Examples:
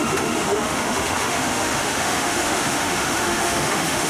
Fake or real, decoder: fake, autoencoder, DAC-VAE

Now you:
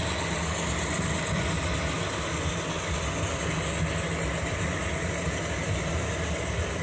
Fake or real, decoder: real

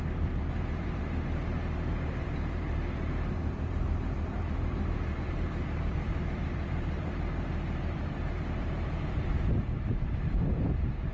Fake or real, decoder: fake, vocoder, BigVGAN v2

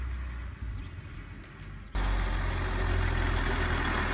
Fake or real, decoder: real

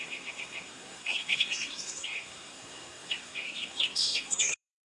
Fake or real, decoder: fake, codec, SNAC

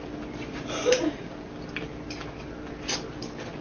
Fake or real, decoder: real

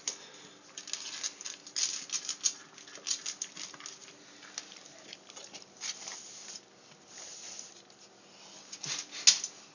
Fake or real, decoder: real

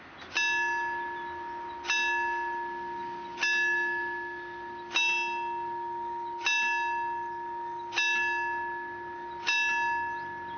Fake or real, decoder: real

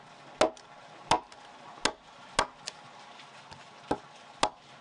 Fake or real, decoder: real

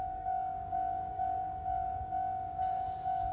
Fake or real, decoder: fake, codec, DAC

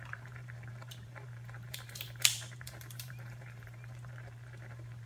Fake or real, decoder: fake, vocoder, BigVGAN v2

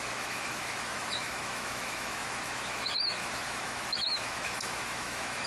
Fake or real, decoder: fake, autoencoder, DAC-VAE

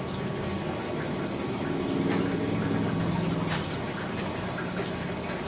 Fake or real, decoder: real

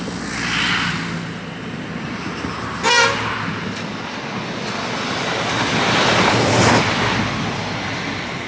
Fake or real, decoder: real